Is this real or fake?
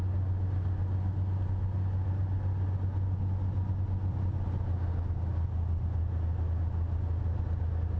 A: real